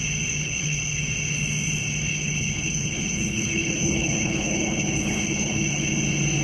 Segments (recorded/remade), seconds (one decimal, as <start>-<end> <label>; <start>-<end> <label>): 0.0-0.4 recorded; 0.4-1.0 remade; 1.0-2.1 recorded; 2.1-5.9 remade; 5.9-6.4 recorded